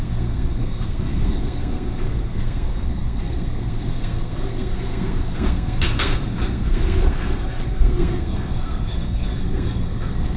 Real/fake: fake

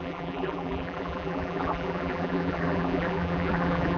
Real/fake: fake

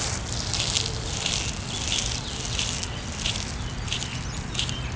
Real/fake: real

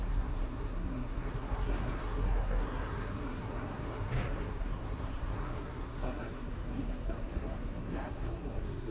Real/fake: fake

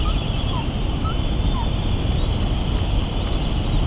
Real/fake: real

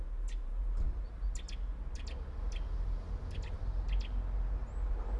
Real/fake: real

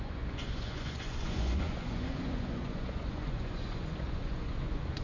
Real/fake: fake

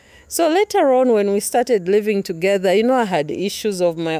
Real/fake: fake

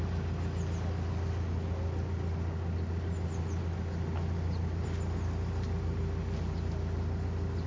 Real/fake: real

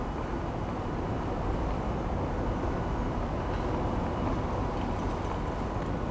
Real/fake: real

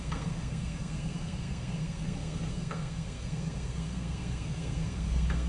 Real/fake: fake